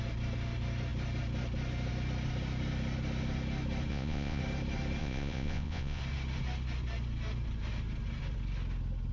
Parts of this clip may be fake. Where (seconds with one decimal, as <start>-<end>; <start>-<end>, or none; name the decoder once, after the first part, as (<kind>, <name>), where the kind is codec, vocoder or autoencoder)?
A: 3.9-4.4 (vocoder, Vocos); 5.0-6.0